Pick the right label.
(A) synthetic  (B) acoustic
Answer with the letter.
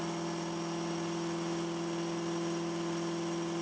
B